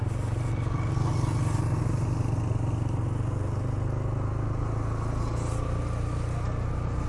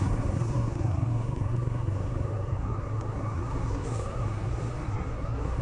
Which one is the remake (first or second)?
second